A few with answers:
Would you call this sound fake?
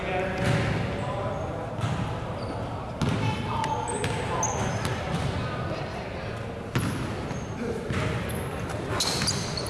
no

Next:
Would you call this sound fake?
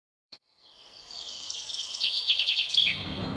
yes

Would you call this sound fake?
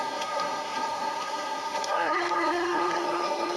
yes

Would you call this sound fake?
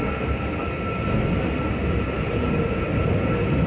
no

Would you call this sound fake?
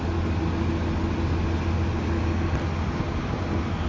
no